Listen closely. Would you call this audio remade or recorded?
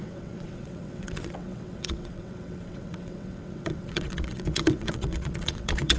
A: remade